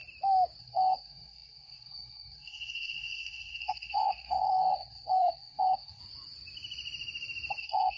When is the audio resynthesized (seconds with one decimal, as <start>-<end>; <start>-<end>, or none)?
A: 0.6-6.0; 7.6-8.0